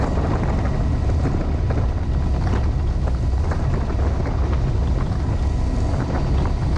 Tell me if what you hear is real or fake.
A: real